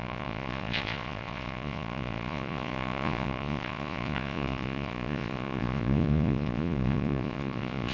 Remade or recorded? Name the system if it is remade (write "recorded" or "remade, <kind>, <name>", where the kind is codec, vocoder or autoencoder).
remade, vocoder, Vocos